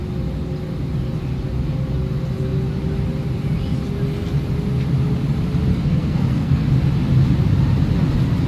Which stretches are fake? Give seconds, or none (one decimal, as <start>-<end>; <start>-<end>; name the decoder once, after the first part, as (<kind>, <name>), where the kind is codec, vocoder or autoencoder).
5.7-6.7 (codec, SNAC)